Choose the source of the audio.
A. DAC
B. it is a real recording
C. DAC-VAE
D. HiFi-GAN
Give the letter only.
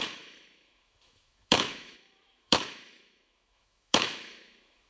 C